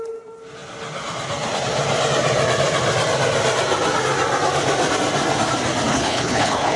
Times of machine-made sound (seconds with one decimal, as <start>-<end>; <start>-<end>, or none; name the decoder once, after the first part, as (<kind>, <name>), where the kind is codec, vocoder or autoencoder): 5.9-6.8 (codec, HILCodec)